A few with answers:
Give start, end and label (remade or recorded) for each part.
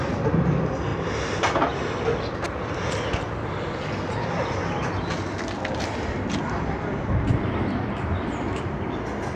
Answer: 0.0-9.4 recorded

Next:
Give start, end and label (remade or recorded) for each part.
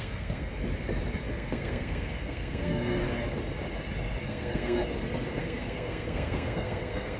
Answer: 0.0-0.5 remade; 0.5-1.3 recorded; 1.3-3.0 remade; 3.0-4.2 recorded; 4.2-4.8 remade; 4.8-5.4 recorded; 5.4-7.2 remade